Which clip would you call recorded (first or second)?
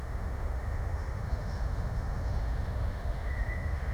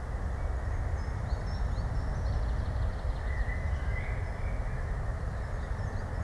second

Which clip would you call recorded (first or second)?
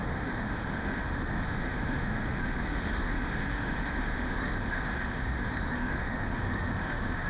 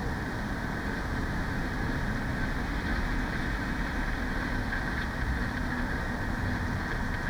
second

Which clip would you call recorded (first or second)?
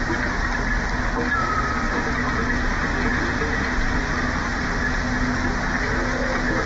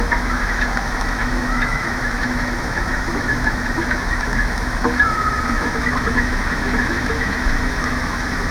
first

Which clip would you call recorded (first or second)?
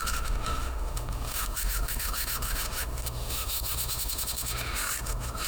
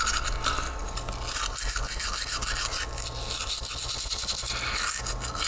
second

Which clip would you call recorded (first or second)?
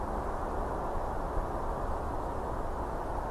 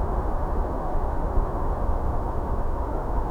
first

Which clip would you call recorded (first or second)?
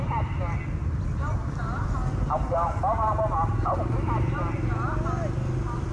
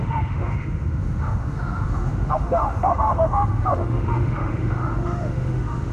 first